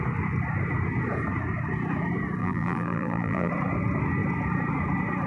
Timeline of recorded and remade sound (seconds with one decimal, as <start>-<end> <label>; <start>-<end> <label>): 0.0-2.4 recorded; 2.4-3.5 remade; 3.5-5.3 recorded